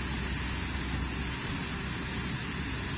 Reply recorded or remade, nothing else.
recorded